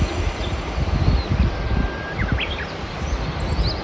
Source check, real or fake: real